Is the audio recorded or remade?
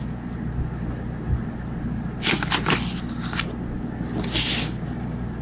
recorded